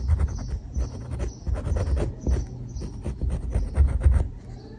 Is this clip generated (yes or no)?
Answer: no